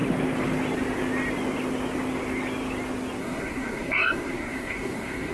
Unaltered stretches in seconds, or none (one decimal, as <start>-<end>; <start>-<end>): 0.0-3.2